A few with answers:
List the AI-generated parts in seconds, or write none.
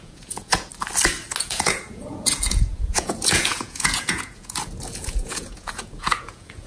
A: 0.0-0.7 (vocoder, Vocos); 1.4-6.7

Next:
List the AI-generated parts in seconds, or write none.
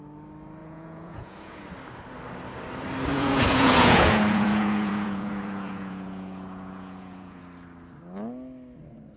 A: 0.6-1.6 (vocoder, Vocos); 3.1-7.4